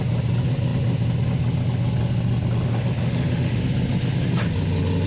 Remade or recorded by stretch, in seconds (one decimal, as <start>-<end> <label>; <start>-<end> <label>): 0.0-3.0 recorded; 3.0-3.6 remade; 3.6-5.1 recorded